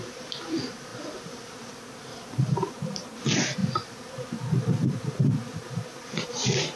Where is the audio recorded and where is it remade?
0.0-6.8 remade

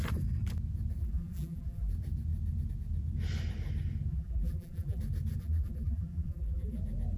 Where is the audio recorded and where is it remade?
0.0-1.0 recorded; 1.0-1.9 remade; 1.9-4.1 recorded; 4.1-5.0 remade; 5.0-5.4 recorded; 5.4-6.8 remade; 6.8-7.2 recorded